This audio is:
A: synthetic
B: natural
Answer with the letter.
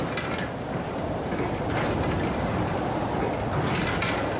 B